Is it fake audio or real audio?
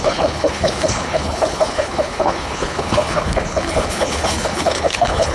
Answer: fake